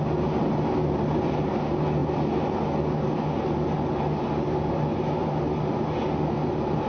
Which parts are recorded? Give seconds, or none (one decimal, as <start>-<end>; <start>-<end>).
0.0-6.9